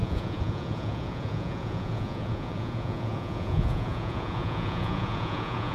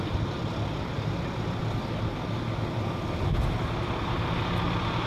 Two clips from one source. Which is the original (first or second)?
second